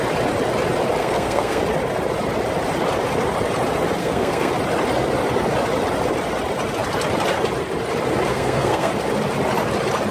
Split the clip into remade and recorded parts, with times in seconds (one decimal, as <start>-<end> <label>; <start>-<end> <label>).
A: 0.0-1.0 recorded; 1.0-1.6 remade; 1.6-4.0 recorded; 4.0-4.5 remade; 4.5-8.3 recorded; 8.3-8.9 remade; 8.9-10.1 recorded